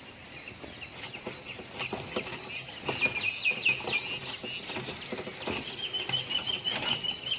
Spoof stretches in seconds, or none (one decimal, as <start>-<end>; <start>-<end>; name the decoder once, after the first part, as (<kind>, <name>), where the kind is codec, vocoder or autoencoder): none